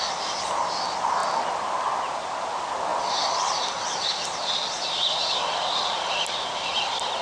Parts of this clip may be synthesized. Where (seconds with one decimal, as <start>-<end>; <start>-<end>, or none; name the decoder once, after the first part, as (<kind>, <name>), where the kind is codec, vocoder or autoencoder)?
none